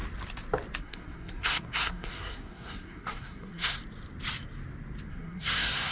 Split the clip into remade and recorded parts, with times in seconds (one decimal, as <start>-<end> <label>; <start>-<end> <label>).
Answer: 0.0-0.8 recorded; 0.8-3.8 remade; 3.8-5.1 recorded; 5.1-5.9 remade

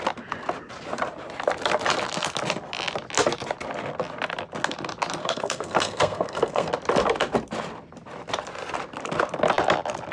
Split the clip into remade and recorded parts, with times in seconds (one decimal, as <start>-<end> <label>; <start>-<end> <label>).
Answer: 0.0-5.2 recorded; 5.2-6.7 remade; 6.7-10.1 recorded

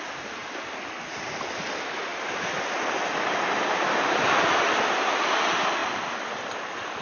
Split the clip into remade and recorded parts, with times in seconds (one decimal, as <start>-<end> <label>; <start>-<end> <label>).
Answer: 0.0-7.0 recorded

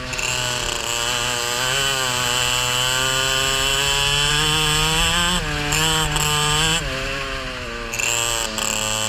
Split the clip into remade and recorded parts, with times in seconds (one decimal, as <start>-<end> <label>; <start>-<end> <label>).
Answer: 0.0-9.1 recorded